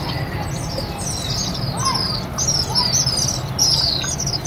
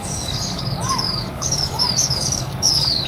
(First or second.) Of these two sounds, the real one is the first